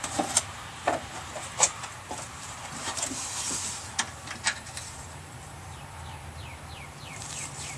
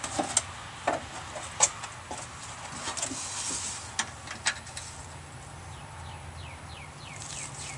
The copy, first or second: first